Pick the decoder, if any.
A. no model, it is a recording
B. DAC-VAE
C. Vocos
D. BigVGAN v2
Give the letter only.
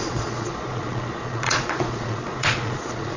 C